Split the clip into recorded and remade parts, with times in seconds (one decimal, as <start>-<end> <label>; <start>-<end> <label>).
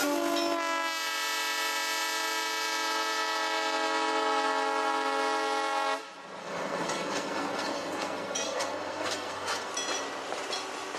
0.0-6.4 recorded; 6.4-9.7 remade; 9.7-11.0 recorded